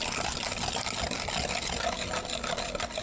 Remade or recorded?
recorded